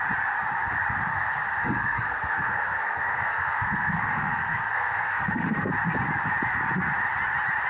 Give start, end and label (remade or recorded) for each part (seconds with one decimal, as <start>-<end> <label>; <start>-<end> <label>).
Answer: 0.0-1.1 recorded; 1.1-5.7 remade; 5.7-7.7 recorded